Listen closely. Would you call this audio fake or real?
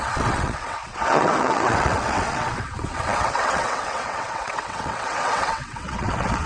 fake